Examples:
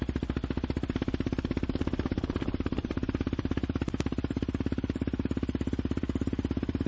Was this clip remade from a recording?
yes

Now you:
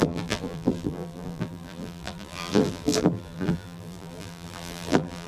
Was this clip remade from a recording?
yes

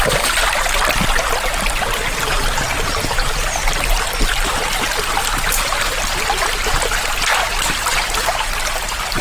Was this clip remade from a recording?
no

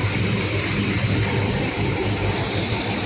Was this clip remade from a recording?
yes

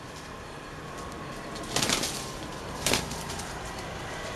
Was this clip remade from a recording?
yes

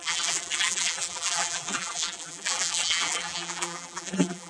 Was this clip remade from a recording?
yes